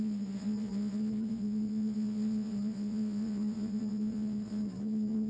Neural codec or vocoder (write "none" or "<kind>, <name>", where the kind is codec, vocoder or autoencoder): vocoder, Vocos